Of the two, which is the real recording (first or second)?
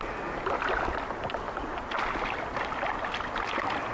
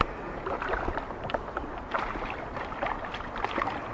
first